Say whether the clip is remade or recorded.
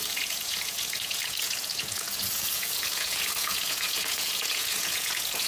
remade